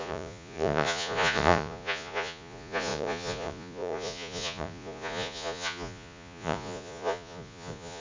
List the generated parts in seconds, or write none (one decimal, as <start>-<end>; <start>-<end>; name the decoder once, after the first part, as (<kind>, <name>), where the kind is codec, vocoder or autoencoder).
0.0-8.0 (vocoder, Vocos)